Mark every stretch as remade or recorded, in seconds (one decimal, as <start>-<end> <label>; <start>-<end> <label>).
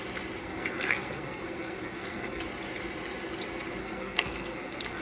0.0-0.4 recorded; 0.4-2.4 remade; 2.4-3.8 recorded; 3.8-5.0 remade